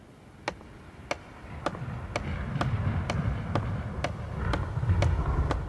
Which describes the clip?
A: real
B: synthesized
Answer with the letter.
A